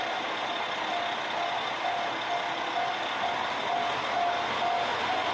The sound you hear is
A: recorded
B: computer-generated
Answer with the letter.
A